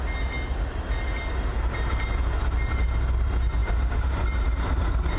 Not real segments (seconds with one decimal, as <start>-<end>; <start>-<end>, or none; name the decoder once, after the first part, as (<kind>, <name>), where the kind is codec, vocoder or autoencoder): none